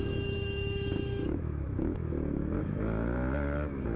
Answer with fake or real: fake